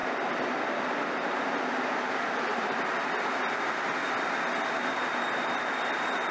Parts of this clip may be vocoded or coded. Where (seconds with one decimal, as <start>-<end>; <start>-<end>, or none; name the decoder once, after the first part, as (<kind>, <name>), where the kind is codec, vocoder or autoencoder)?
none